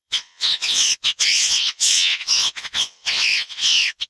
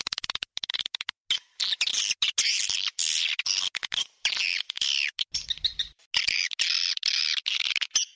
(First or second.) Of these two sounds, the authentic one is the second